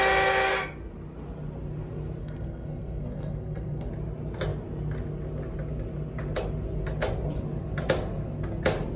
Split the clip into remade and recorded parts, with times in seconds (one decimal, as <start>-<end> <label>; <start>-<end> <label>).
0.0-2.2 recorded; 2.2-3.9 remade; 3.9-9.0 recorded